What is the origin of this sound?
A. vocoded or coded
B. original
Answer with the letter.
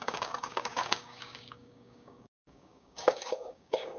A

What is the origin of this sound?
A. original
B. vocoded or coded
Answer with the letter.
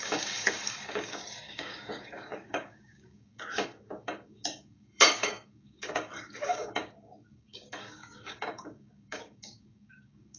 B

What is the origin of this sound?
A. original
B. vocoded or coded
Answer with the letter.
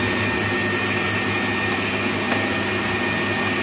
A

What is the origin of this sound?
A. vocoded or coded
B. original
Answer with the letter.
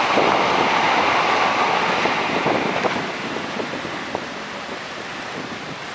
B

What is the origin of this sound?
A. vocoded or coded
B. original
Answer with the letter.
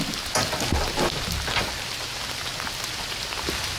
B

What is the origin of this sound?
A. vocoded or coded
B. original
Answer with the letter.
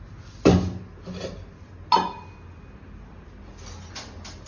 B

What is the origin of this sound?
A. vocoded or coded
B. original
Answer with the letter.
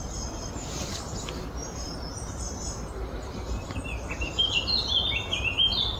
B